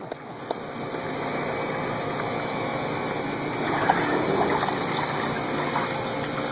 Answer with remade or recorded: recorded